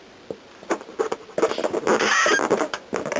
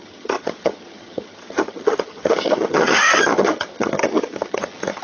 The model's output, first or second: second